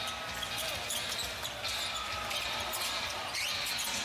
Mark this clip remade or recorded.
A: recorded